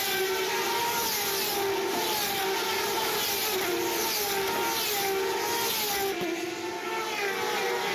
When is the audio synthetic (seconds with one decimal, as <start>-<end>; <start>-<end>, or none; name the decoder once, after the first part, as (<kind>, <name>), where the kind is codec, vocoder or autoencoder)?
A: none